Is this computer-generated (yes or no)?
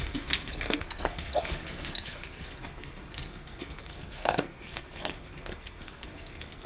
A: yes